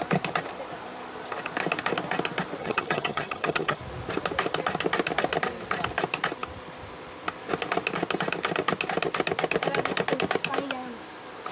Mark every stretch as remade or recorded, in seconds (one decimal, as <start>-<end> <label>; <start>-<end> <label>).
0.0-2.6 recorded; 2.6-3.8 remade; 3.8-11.5 recorded